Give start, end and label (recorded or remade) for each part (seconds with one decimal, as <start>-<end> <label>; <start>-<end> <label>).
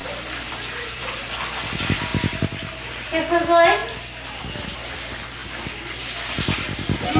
0.0-1.3 remade; 1.3-7.2 recorded